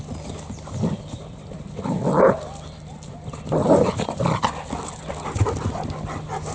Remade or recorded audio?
recorded